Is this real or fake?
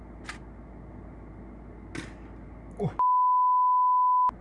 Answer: real